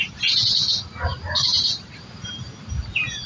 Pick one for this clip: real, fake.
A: real